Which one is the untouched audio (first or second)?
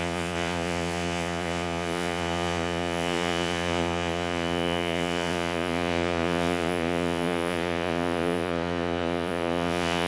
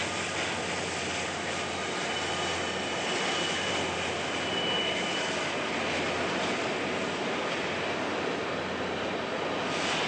second